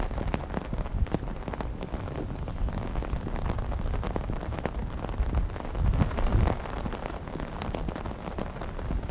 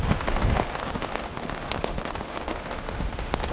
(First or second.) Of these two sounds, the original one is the first